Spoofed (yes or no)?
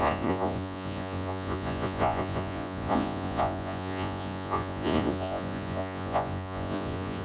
yes